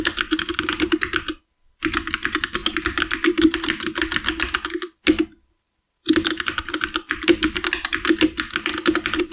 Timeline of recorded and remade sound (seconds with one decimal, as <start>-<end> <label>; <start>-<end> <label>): 0.0-9.3 recorded